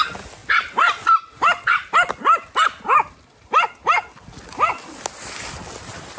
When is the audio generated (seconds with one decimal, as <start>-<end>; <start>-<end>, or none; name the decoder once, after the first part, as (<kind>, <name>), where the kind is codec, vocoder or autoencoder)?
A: none